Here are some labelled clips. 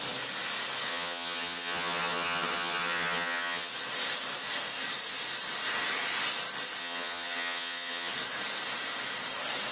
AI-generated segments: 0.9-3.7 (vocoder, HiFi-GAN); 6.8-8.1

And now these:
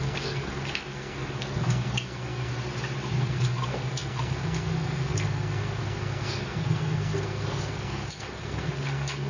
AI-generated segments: 0.0-2.5 (codec, SNAC); 3.2-9.3

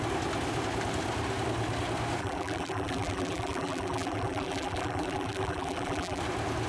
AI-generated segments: 2.2-6.2 (vocoder, BigVGAN v2)

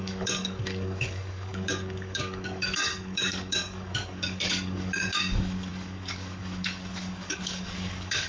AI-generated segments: 0.0-8.3 (codec, DAC)

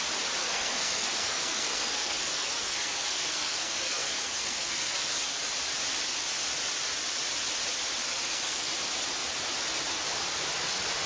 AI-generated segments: 0.4-5.4 (codec, SNAC); 8.1-8.7